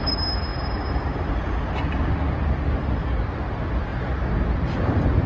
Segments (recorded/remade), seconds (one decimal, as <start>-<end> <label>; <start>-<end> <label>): 0.0-5.3 recorded